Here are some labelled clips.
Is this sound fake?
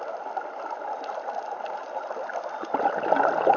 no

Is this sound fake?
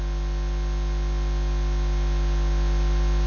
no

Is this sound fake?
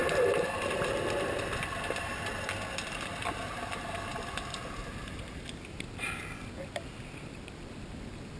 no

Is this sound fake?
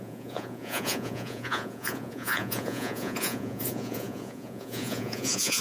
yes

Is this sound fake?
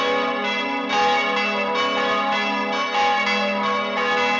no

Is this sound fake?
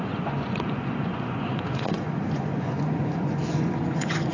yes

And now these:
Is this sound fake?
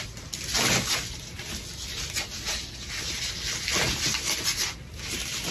no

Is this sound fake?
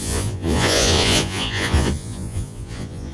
yes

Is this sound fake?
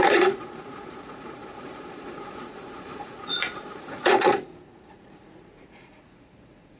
yes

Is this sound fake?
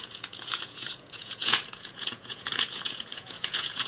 yes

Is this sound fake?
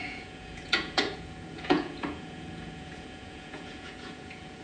yes